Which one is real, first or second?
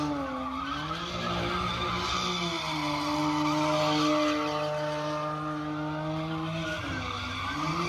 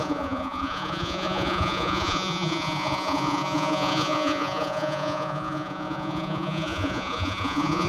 first